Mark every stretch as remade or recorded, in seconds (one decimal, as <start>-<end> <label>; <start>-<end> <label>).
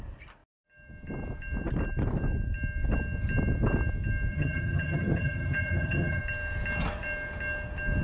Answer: 0.0-4.3 recorded; 4.3-6.2 remade; 6.2-8.0 recorded